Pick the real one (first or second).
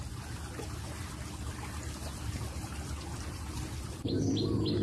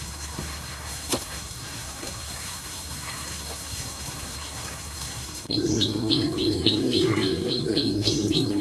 first